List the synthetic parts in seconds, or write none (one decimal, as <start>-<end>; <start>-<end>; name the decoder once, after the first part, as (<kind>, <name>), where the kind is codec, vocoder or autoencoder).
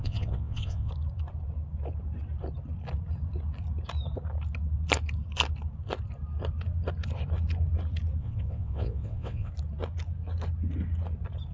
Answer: 0.0-0.9 (vocoder, WaveNeXt); 8.2-9.5